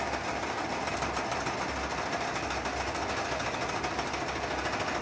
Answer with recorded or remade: recorded